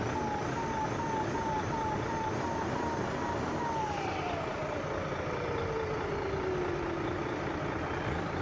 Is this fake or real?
real